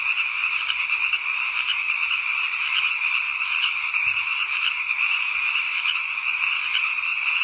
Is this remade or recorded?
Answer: remade